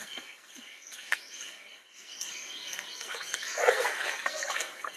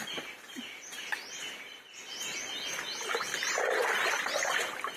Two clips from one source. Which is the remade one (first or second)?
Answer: first